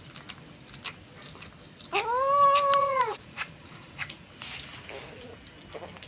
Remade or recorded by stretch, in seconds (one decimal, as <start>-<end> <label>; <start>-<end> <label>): 0.0-2.8 recorded; 2.8-4.3 remade; 4.3-6.1 recorded